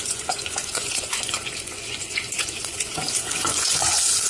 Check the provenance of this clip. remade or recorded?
remade